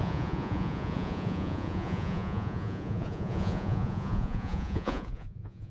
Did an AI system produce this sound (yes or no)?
yes